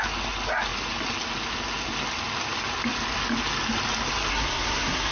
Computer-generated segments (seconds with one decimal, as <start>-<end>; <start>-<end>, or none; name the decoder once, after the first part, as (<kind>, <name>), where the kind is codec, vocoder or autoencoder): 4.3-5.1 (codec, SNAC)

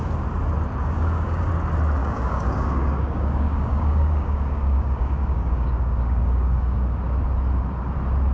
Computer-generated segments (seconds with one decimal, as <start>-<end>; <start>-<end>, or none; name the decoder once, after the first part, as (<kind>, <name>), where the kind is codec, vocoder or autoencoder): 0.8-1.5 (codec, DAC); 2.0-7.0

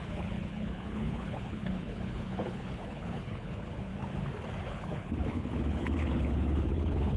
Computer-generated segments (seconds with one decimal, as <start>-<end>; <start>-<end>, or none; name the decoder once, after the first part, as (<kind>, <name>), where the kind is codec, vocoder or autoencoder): 0.0-3.9 (codec, HILCodec); 4.7-7.2

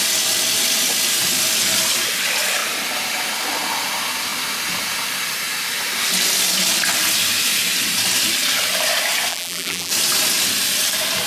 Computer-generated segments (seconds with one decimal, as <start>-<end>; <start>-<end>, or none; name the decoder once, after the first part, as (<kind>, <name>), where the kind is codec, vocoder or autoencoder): 9.3-9.9 (vocoder, BigVGAN v2)